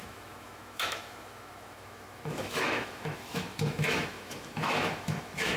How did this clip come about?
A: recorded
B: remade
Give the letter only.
B